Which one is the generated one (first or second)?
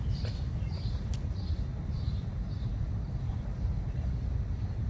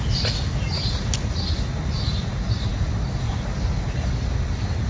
first